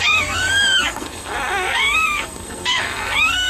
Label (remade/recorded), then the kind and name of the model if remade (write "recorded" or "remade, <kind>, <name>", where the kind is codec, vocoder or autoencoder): remade, codec, SNAC